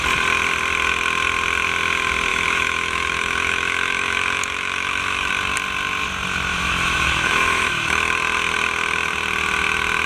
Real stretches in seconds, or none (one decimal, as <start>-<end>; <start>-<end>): 0.0-2.3; 5.3-6.5; 8.1-10.1